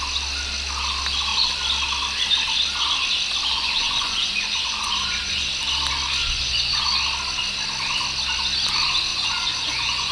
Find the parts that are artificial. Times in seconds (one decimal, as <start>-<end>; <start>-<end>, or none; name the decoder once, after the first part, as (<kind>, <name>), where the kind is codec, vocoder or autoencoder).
3.5-5.5 (vocoder, Vocos); 6.2-6.8; 9.1-10.1